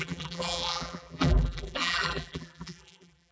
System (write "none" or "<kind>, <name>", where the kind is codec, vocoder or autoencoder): vocoder, BigVGAN v2